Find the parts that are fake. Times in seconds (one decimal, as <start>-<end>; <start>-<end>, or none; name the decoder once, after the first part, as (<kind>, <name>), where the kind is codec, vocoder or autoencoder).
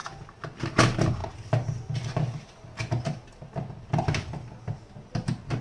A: none